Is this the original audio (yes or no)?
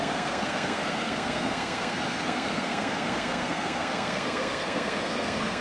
no